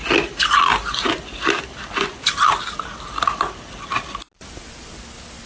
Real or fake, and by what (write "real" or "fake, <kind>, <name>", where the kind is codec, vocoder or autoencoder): real